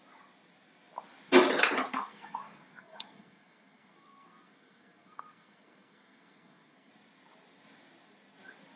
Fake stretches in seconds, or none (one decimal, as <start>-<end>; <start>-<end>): 1.9-6.9